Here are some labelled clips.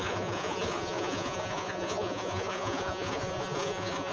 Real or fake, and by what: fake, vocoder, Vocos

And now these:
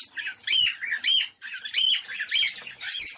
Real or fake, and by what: real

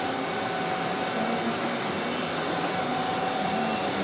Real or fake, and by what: real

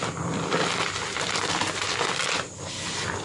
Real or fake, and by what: real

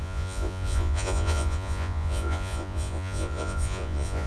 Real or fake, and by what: fake, vocoder, Vocos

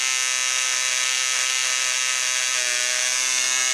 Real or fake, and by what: real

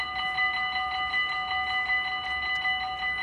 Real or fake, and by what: real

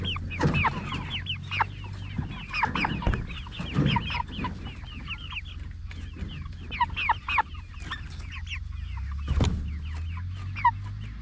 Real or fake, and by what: real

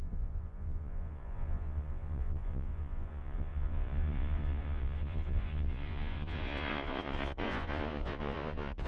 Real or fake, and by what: fake, vocoder, Vocos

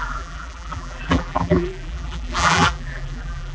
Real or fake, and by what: fake, vocoder, BigVGAN v2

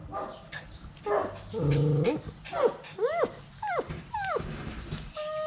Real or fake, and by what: real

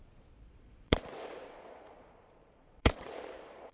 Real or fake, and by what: fake, vocoder, Vocos